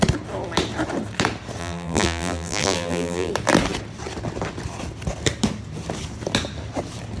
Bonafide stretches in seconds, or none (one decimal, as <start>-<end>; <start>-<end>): 0.0-1.6; 3.3-7.2